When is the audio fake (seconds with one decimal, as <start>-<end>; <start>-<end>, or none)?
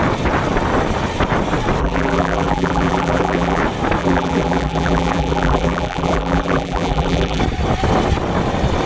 1.8-3.6; 4.0-7.4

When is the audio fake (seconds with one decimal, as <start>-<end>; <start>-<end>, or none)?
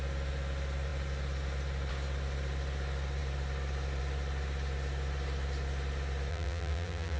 6.3-7.2